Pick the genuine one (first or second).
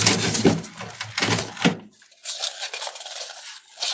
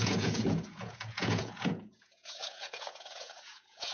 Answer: first